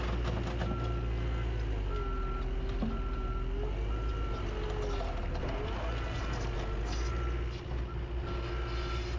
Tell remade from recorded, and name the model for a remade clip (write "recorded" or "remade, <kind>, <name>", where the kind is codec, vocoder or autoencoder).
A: recorded